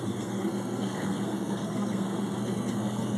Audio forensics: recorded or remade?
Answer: remade